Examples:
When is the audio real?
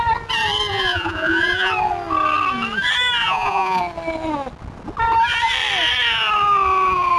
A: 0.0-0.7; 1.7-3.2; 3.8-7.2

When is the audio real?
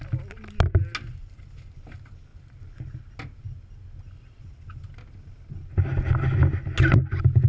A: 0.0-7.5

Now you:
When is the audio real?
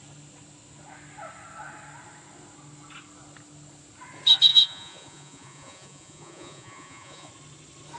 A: 0.0-4.5; 7.3-8.0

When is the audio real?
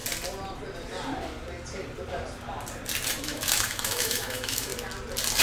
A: 0.0-3.2; 4.7-5.4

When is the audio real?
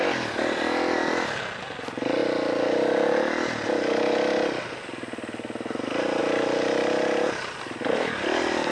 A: 0.0-8.7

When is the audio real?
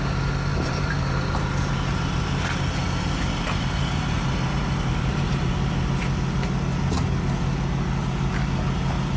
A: 0.0-0.5; 5.5-9.2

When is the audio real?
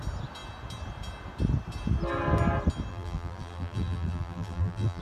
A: 0.0-2.9